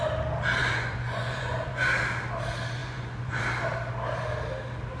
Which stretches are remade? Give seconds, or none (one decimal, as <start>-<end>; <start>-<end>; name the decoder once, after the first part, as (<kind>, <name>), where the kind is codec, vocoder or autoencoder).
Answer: 0.6-1.9 (vocoder, Vocos); 2.8-3.4